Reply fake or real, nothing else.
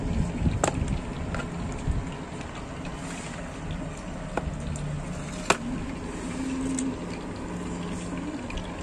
real